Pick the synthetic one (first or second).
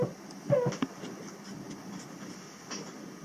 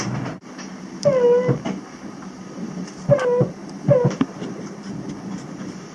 second